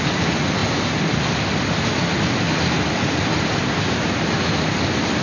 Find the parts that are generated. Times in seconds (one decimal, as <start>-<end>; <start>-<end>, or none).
none